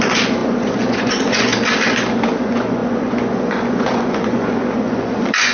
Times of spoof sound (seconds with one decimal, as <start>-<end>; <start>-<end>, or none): 0.0-1.5; 2.4-5.5